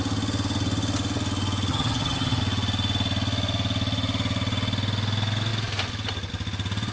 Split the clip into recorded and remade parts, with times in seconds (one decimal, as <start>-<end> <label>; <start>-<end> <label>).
0.0-1.7 recorded; 1.7-2.4 remade; 2.4-6.9 recorded